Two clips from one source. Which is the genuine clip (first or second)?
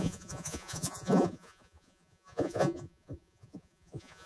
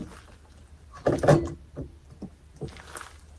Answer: second